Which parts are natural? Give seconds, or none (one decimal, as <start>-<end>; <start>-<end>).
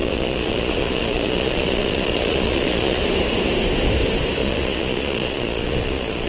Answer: 3.0-4.4